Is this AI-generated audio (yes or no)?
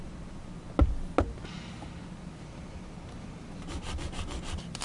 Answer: no